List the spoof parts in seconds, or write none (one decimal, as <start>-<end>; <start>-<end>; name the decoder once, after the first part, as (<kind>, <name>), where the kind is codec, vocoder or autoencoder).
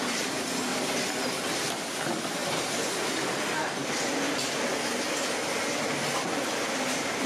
0.0-0.7 (vocoder, BigVGAN v2); 1.7-2.4; 6.5-7.3